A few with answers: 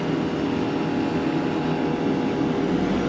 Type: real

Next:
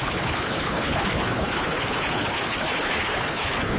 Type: fake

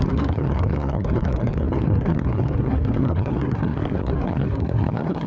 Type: fake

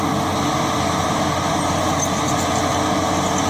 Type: real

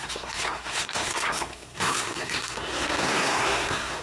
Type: fake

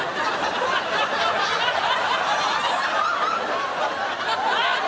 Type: real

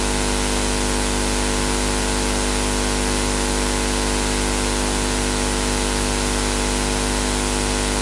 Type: real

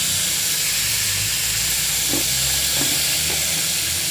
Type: fake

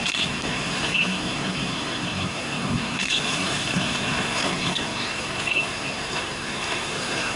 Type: fake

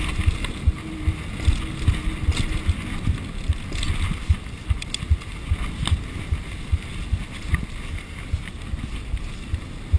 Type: real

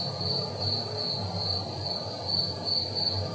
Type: real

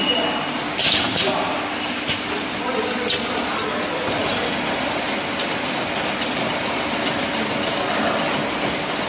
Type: real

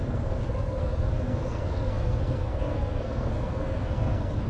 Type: fake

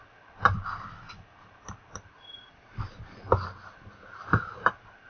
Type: real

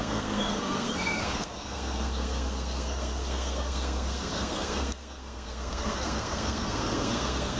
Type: fake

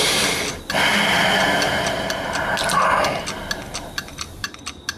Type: real